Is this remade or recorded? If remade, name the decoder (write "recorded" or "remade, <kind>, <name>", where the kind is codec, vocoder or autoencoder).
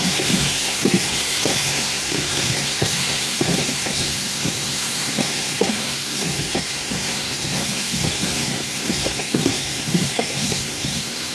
remade, codec, SNAC